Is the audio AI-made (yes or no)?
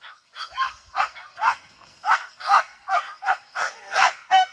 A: yes